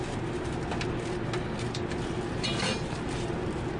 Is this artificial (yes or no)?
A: no